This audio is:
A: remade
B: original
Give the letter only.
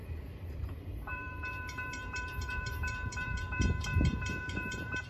A